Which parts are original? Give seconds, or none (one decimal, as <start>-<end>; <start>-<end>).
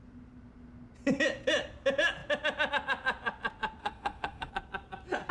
0.0-3.8; 4.5-5.3